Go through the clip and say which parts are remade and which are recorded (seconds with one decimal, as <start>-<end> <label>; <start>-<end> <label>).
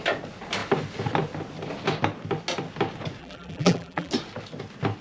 0.0-3.2 recorded; 3.2-4.1 remade; 4.1-5.0 recorded